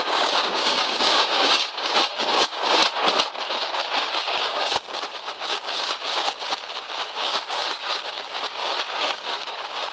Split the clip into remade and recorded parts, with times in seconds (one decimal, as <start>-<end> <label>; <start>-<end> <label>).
0.0-2.8 remade; 2.8-3.5 recorded; 3.5-9.9 remade